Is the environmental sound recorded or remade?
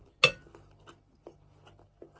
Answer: recorded